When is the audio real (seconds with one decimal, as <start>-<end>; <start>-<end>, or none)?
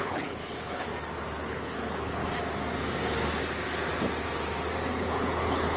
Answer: 0.9-1.5; 2.2-4.9